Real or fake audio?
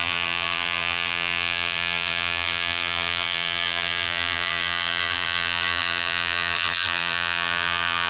fake